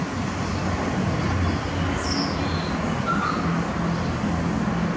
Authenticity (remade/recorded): recorded